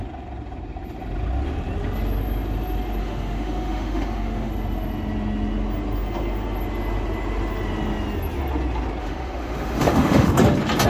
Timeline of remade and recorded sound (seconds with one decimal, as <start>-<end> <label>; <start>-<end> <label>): 0.0-3.0 recorded; 3.0-4.5 remade; 4.5-9.0 recorded; 9.0-10.3 remade; 10.3-10.9 recorded